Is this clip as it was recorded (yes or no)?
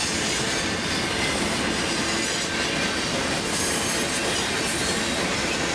yes